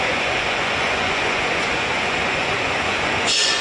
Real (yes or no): no